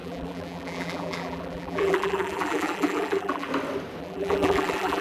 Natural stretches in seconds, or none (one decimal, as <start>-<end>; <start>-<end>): 3.5-4.0